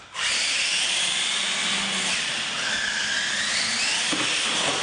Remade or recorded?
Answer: recorded